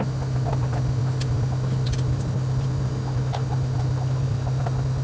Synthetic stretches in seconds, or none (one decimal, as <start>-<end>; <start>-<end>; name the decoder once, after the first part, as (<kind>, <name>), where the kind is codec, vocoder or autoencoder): none